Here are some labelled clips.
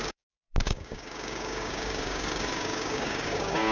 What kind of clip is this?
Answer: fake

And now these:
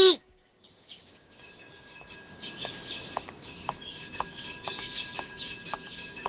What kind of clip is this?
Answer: fake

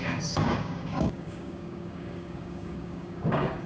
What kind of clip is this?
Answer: fake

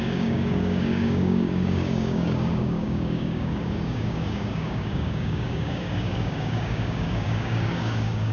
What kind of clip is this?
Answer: fake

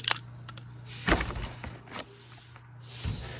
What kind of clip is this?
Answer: real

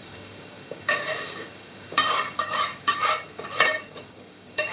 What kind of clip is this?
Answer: fake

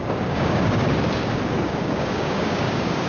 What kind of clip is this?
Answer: fake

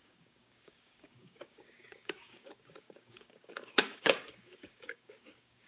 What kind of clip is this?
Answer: fake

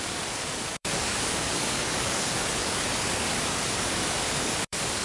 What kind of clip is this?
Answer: fake